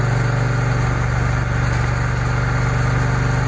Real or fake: real